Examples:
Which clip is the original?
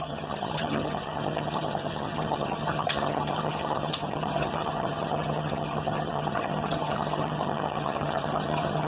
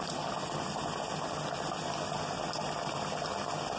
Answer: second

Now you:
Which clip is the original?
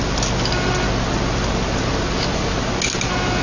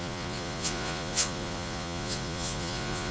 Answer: first